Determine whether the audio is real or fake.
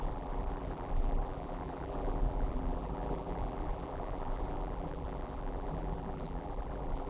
fake